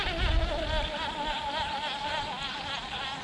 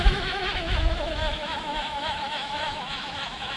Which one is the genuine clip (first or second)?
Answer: first